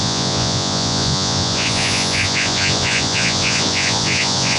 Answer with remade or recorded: remade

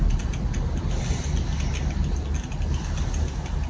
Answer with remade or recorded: recorded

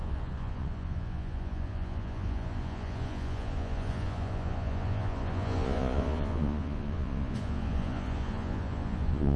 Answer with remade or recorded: remade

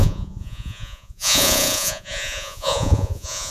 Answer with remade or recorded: remade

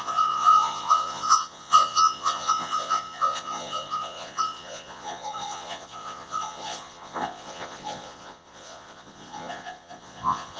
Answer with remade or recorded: remade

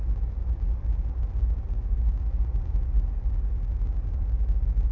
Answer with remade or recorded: recorded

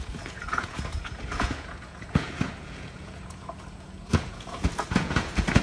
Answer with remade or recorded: remade